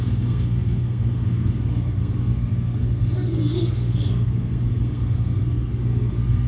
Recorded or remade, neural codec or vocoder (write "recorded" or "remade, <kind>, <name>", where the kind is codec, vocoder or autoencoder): remade, codec, SNAC